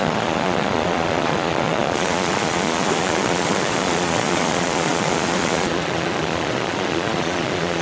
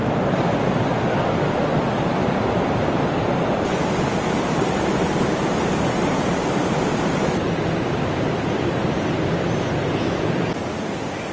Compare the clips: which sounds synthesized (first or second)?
first